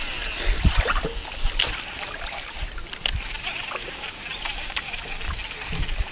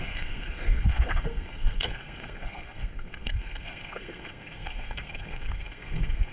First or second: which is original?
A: first